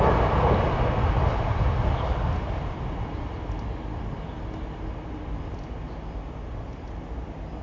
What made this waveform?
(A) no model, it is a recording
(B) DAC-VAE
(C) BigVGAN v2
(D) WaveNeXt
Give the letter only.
A